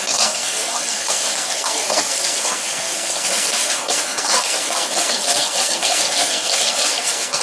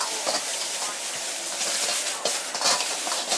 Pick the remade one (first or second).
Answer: first